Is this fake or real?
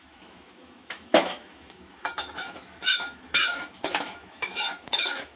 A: fake